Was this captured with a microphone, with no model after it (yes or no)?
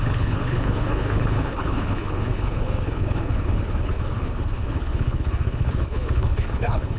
no